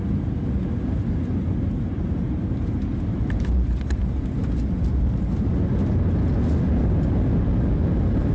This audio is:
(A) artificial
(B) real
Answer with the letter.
B